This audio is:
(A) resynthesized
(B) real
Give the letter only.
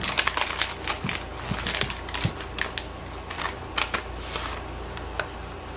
B